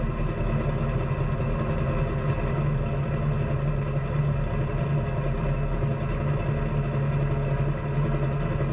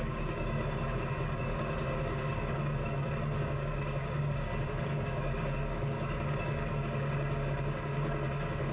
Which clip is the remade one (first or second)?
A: second